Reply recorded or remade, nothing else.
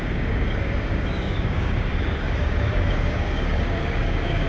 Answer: remade